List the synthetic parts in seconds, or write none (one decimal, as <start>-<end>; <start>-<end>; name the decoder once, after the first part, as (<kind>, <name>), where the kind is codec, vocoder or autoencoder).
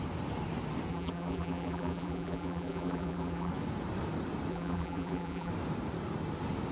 0.9-3.5 (vocoder, BigVGAN v2); 4.5-5.5